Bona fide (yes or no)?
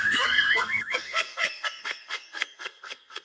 no